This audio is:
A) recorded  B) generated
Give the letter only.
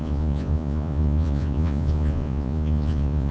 B